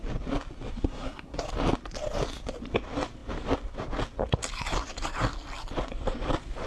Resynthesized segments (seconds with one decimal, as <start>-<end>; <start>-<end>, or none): 0.7-1.4